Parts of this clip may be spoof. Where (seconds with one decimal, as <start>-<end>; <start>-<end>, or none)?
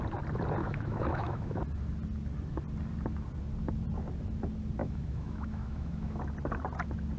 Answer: 0.6-1.6; 4.8-6.2